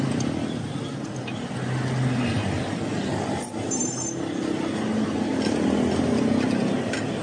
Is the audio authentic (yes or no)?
yes